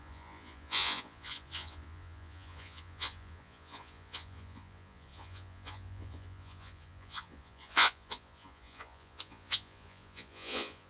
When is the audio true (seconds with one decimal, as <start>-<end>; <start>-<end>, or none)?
none